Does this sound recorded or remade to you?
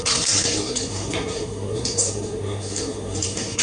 remade